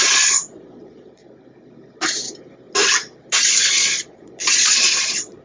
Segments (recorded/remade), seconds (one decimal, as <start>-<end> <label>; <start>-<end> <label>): 0.0-1.2 remade; 1.2-3.7 recorded; 3.7-5.4 remade